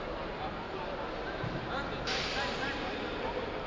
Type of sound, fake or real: real